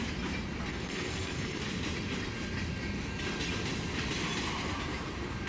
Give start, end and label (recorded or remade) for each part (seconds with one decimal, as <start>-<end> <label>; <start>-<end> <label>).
0.0-0.7 recorded; 0.7-1.6 remade; 1.6-5.5 recorded